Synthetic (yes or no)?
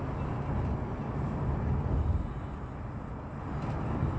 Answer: no